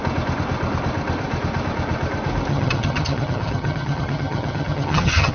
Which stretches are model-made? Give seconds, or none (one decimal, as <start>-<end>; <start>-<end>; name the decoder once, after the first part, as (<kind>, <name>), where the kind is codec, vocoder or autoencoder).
2.5-5.3 (vocoder, HiFi-GAN)